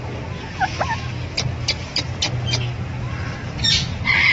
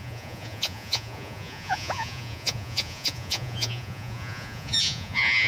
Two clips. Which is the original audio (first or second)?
first